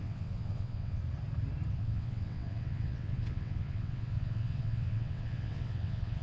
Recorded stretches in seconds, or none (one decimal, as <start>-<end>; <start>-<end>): 1.0-1.7